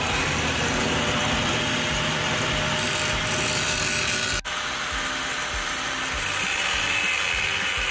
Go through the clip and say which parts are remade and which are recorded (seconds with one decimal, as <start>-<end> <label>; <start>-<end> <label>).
0.0-7.9 recorded